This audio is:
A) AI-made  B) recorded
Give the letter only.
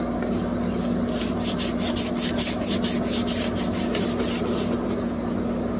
B